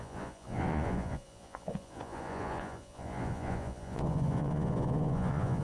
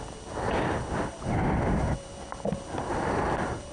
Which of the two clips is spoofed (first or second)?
first